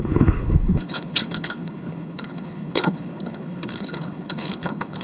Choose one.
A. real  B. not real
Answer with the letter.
B